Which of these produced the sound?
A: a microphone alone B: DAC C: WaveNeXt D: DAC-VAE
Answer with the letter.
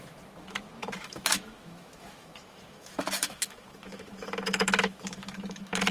D